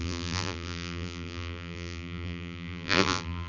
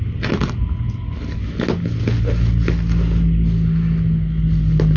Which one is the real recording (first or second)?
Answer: second